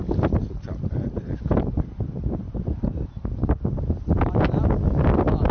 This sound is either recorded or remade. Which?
recorded